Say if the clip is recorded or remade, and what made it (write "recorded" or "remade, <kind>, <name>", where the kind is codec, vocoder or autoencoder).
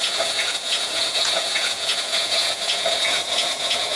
remade, vocoder, Vocos